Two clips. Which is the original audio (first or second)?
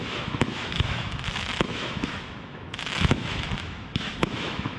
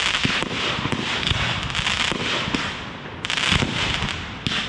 second